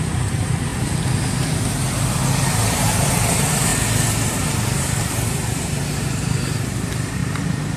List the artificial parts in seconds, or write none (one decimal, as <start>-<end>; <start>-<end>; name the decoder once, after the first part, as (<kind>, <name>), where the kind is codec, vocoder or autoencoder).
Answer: 0.0-0.7 (vocoder, BigVGAN v2); 2.5-3.7; 4.3-7.2